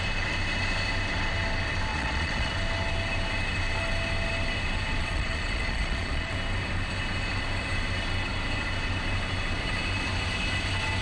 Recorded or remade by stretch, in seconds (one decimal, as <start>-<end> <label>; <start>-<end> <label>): 0.0-1.9 recorded; 1.9-2.5 remade; 2.5-5.0 recorded; 5.0-6.3 remade; 6.3-11.0 recorded